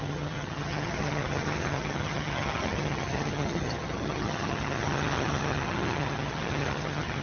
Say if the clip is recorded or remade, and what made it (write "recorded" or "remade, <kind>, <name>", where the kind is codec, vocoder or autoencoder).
remade, vocoder, HiFi-GAN